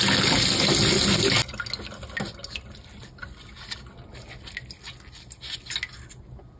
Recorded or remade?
recorded